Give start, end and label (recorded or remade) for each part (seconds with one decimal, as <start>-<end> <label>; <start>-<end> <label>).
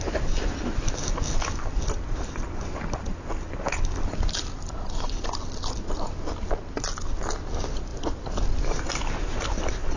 0.0-10.0 recorded